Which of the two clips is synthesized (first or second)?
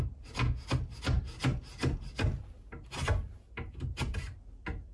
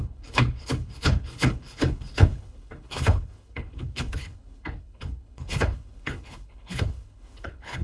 second